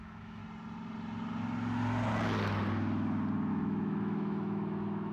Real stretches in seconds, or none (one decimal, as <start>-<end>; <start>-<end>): 0.4-3.5